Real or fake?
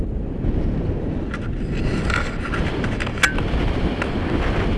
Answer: real